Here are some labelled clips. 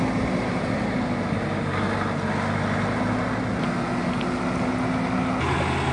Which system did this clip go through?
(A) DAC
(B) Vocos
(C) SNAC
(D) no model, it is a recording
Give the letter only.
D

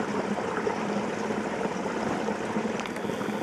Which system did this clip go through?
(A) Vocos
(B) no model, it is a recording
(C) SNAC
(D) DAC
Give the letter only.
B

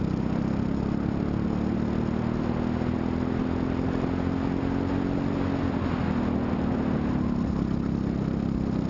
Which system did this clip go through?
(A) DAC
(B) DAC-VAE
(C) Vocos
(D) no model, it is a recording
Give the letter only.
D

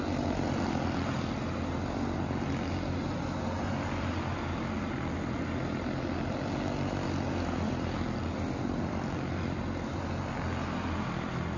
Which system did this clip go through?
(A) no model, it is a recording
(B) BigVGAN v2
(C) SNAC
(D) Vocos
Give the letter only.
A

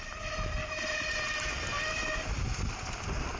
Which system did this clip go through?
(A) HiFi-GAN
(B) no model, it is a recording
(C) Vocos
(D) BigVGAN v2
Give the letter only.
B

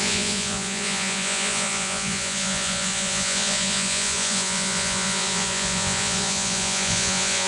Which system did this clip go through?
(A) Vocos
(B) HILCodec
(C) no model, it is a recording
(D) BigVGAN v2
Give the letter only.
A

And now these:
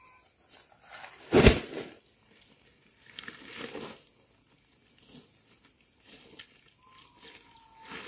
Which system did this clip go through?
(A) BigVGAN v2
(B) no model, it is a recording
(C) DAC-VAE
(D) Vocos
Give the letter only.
B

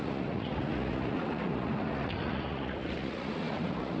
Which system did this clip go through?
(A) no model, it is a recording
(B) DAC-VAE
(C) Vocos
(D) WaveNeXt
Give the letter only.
C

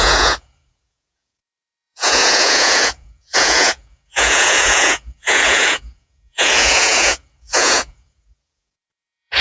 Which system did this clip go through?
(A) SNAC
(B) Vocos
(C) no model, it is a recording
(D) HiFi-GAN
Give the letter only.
B